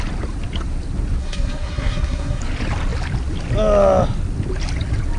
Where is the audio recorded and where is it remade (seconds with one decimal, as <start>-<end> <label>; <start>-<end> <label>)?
0.0-1.2 recorded; 1.2-2.4 remade; 2.4-5.2 recorded